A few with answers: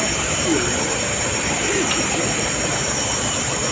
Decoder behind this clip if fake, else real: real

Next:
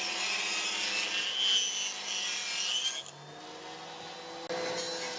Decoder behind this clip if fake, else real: real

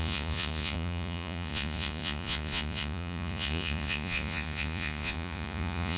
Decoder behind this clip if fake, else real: fake, vocoder, Vocos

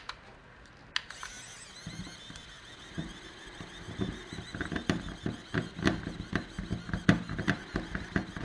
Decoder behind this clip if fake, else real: real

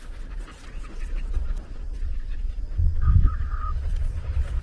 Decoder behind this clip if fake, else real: fake, vocoder, Vocos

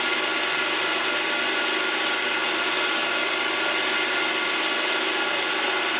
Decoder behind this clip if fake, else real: real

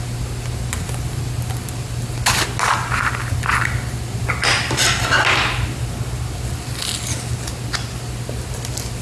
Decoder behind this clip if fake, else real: real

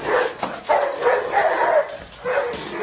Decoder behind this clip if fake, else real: real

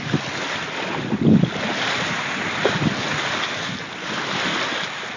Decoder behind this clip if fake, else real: real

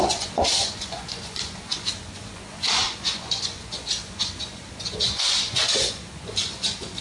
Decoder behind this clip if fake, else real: fake, vocoder, Vocos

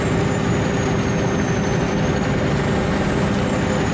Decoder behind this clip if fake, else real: real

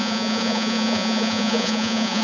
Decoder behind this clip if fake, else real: fake, vocoder, Vocos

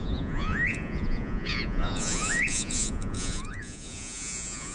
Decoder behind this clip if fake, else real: fake, vocoder, Vocos